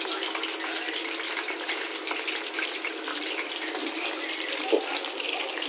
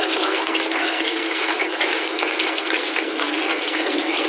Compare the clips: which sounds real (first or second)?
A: first